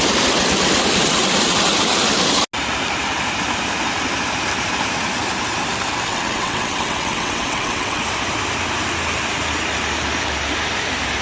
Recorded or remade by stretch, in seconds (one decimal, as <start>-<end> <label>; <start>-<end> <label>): 0.0-6.1 recorded; 6.1-8.0 remade; 8.0-11.2 recorded